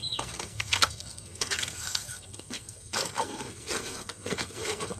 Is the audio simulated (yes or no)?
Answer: yes